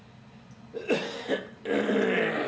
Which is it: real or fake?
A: real